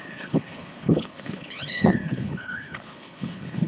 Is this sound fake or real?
fake